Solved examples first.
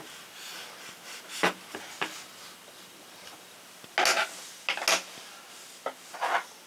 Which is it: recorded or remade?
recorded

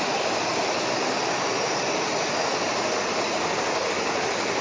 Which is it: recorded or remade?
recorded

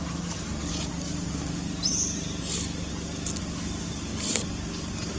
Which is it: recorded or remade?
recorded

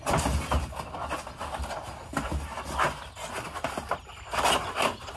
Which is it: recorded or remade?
recorded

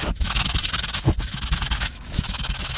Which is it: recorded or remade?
remade